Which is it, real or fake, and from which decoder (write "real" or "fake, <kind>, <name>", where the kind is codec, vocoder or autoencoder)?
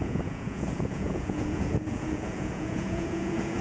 fake, vocoder, Vocos